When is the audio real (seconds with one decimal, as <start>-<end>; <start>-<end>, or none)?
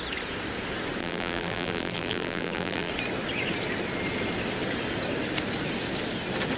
0.0-1.0; 2.9-6.6